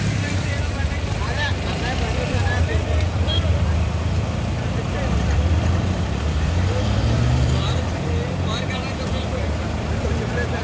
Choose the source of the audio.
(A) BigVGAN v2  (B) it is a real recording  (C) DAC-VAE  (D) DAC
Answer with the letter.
A